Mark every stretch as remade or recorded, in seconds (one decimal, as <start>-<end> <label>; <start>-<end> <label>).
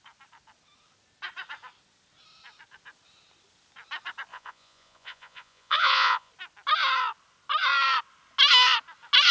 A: 0.0-4.3 recorded; 4.3-6.3 remade; 6.3-9.3 recorded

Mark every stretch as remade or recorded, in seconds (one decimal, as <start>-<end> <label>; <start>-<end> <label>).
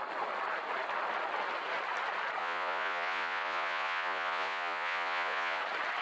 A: 0.0-2.4 recorded; 2.4-5.6 remade; 5.6-6.0 recorded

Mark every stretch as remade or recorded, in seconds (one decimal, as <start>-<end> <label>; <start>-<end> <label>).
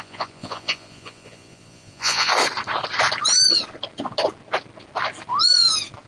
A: 0.0-2.3 remade; 2.3-6.1 recorded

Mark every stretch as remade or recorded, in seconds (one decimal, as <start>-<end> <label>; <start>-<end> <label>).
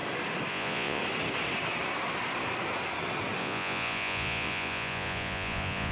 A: 0.0-0.5 recorded; 0.5-1.0 remade; 1.0-3.4 recorded; 3.4-5.9 remade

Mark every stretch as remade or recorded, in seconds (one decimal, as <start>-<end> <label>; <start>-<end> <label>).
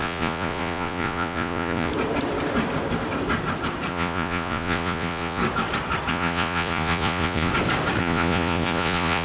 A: 0.0-1.9 remade; 1.9-3.9 recorded; 3.9-5.4 remade; 5.4-6.1 recorded; 6.1-7.5 remade; 7.5-8.0 recorded; 8.0-9.2 remade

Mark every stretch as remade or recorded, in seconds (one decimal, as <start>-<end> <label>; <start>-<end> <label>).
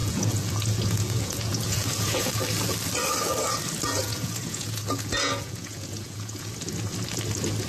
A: 0.0-2.3 remade; 2.3-4.0 recorded; 4.0-6.5 remade; 6.5-7.7 recorded